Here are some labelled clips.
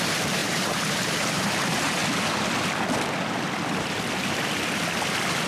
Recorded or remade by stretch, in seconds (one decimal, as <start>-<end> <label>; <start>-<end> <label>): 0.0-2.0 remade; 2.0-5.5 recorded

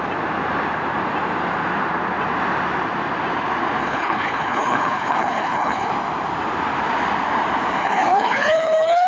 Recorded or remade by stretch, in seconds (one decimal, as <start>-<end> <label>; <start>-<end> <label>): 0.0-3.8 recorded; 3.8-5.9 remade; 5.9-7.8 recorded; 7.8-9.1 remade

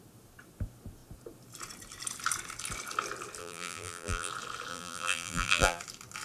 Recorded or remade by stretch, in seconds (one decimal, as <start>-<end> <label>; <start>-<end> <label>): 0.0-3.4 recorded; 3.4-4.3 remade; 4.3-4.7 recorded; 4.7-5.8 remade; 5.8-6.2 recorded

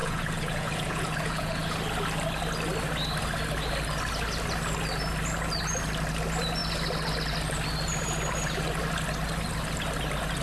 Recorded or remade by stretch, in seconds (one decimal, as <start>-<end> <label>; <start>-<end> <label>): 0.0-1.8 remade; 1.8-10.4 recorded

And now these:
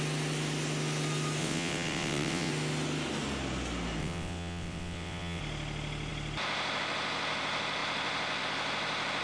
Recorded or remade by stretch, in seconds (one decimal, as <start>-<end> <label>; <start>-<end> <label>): 0.0-1.4 recorded; 1.4-2.5 remade; 2.5-4.0 recorded; 4.0-5.4 remade; 5.4-9.2 recorded

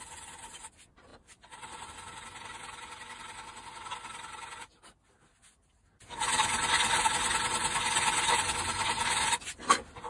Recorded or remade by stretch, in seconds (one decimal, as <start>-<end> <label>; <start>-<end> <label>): 0.0-10.1 recorded

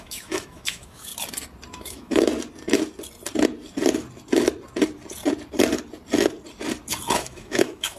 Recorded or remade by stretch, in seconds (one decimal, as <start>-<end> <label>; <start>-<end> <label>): 0.0-1.1 remade; 1.1-1.7 recorded; 1.7-2.3 remade; 2.3-7.1 recorded; 7.1-8.0 remade

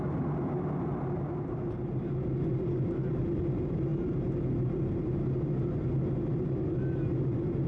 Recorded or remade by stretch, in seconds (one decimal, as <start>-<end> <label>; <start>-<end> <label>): 0.0-7.7 recorded